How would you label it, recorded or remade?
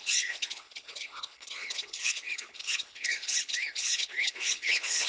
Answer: remade